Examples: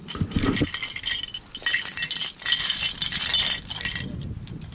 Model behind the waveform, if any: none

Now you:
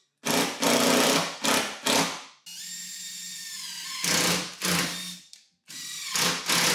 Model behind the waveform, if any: none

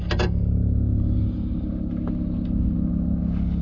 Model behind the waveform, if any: none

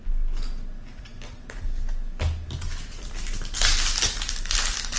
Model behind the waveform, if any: none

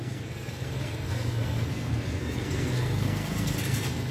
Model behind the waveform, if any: codec, SNAC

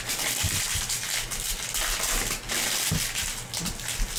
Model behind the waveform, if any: none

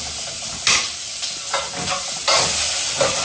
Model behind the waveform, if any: none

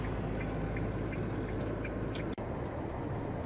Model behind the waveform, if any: none